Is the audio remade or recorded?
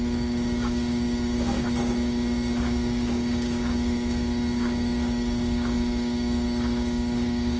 remade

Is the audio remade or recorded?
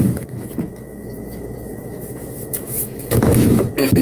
remade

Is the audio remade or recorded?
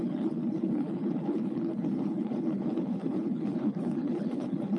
remade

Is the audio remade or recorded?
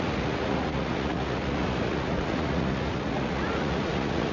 remade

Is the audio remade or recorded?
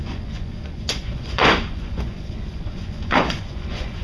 remade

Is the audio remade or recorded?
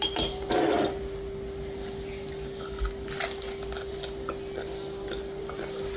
recorded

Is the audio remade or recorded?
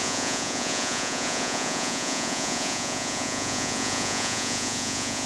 remade